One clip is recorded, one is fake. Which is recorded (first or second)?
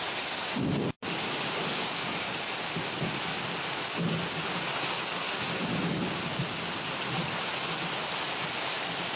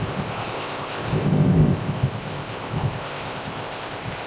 first